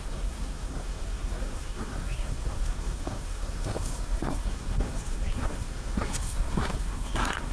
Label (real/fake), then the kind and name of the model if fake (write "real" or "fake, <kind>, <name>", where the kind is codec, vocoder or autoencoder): fake, codec, SNAC